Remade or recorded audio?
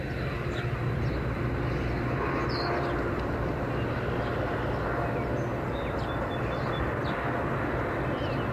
recorded